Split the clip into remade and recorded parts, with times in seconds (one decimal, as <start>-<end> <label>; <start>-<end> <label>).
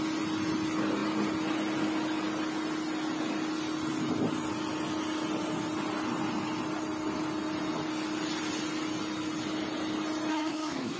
0.0-10.3 recorded; 10.3-11.0 remade